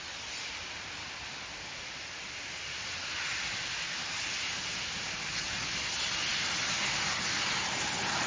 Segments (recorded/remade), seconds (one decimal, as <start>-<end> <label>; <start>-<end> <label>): 0.0-8.3 recorded